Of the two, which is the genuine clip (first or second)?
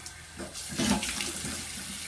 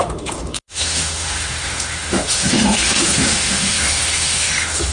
first